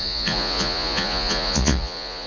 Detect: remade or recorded remade